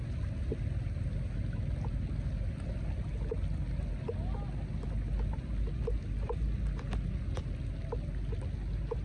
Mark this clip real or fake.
real